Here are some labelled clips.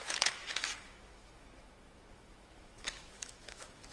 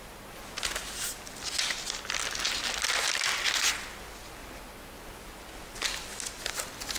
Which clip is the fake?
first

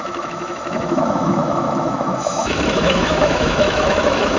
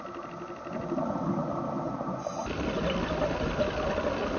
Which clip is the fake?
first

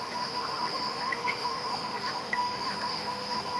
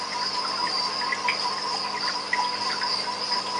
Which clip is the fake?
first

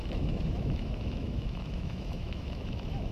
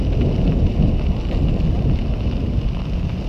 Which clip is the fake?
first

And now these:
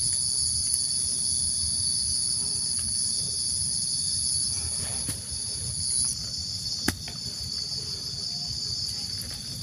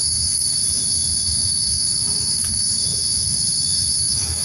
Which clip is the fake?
second